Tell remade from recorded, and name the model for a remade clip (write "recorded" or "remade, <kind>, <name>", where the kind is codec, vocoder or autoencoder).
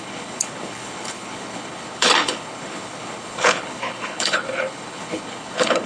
remade, codec, HILCodec